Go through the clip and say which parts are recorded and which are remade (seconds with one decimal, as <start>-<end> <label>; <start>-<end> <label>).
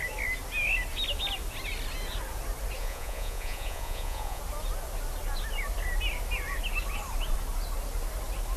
0.0-2.8 recorded; 2.8-4.4 remade; 4.4-8.6 recorded